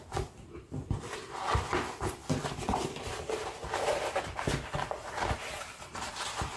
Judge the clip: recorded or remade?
recorded